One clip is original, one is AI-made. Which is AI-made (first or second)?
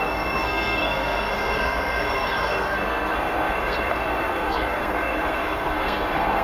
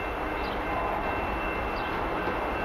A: first